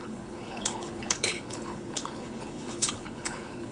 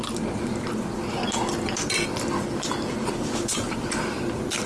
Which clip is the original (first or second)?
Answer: second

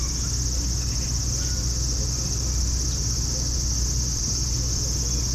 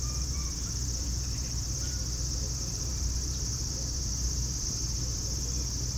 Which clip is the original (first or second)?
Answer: first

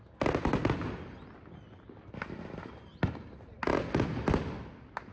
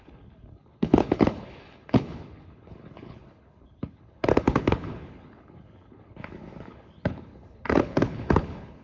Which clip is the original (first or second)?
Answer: first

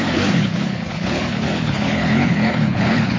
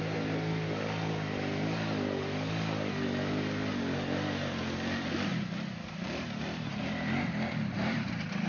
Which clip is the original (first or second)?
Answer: second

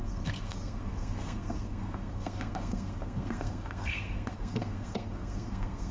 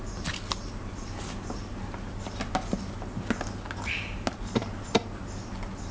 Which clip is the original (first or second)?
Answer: second